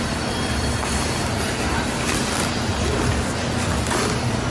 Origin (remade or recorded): recorded